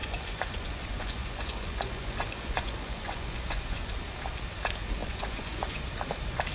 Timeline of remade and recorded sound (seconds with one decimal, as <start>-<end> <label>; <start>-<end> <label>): 0.0-3.9 remade; 3.9-5.0 recorded; 5.0-5.8 remade; 5.8-6.5 recorded